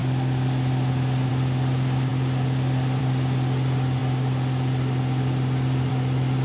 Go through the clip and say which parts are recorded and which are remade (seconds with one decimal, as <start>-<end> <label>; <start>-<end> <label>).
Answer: 0.0-6.4 recorded